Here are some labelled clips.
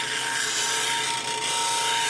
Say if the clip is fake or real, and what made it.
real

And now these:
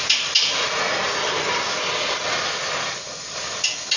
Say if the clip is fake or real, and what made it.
real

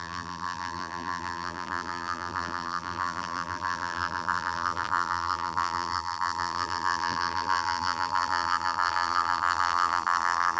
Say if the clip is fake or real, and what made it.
fake, vocoder, BigVGAN v2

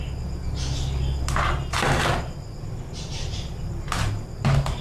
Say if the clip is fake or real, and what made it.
real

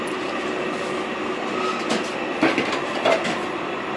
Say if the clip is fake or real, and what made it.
real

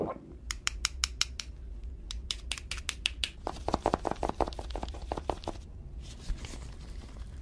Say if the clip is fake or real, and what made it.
real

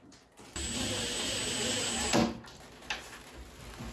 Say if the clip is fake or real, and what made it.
real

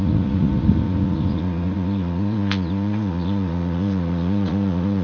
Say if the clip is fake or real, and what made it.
fake, vocoder, Vocos